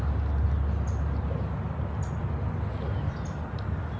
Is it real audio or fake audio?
real